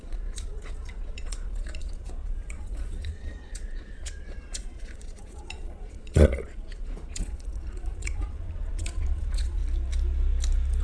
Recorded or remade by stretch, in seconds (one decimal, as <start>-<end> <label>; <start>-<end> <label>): 0.0-9.6 remade; 9.6-10.8 recorded

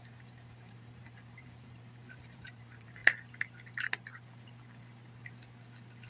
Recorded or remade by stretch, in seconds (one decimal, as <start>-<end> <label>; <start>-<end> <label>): 0.0-3.0 remade; 3.0-6.1 recorded

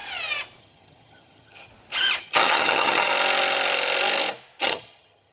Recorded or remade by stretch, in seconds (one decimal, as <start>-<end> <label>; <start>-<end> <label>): 0.0-0.6 recorded; 0.6-1.7 remade; 1.7-2.2 recorded; 2.2-3.1 remade; 3.1-4.6 recorded; 4.6-5.3 remade

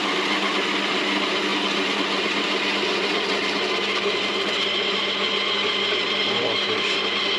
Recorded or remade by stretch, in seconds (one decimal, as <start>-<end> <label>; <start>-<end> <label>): 0.0-1.5 recorded; 1.5-2.6 remade; 2.6-7.4 recorded

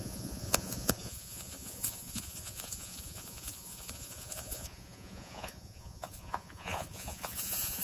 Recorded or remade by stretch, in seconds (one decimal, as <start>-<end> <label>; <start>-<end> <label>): 0.0-7.8 remade

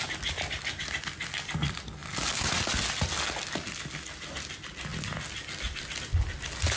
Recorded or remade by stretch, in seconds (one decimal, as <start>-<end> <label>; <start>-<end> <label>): 0.0-6.8 recorded

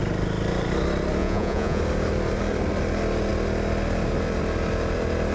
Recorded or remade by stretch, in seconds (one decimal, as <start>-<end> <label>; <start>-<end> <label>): 0.0-1.2 recorded; 1.2-1.8 remade; 1.8-5.3 recorded